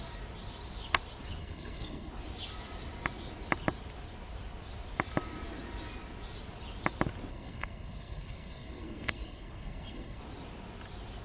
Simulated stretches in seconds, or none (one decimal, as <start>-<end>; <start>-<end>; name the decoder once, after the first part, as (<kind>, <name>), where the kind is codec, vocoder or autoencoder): 1.4-2.1 (codec, SNAC); 7.3-10.2